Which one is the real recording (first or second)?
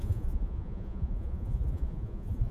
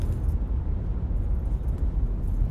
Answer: second